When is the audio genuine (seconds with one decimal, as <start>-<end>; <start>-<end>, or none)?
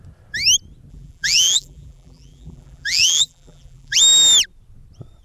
0.0-0.9; 4.0-5.2